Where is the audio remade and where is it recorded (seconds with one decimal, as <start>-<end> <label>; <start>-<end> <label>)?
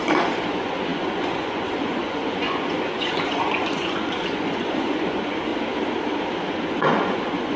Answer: 0.0-5.5 remade; 5.5-6.8 recorded; 6.8-7.6 remade